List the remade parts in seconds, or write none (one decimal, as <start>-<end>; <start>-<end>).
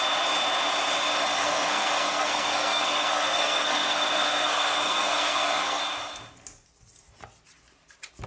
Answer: 1.4-5.8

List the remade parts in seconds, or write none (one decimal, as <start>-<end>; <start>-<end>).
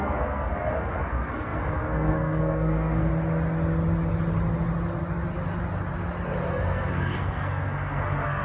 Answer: 0.0-3.1; 6.5-8.4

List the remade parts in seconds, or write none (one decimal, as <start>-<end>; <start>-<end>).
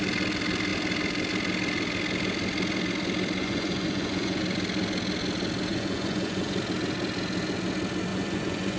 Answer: 3.4-4.4; 5.7-6.6; 8.1-8.8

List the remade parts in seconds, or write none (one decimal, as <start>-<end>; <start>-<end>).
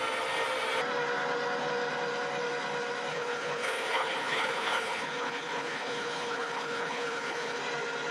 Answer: 3.1-7.6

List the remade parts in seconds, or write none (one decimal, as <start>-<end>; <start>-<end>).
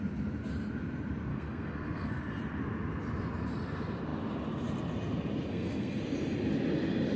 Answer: 1.3-2.2; 5.5-6.0